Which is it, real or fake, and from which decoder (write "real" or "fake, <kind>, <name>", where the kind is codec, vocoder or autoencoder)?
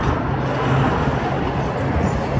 real